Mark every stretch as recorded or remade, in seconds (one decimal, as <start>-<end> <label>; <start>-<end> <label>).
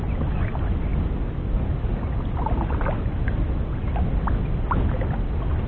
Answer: 0.0-5.7 recorded